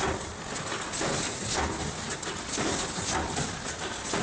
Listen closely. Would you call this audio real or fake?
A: real